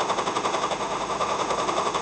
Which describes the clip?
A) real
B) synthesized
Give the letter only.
B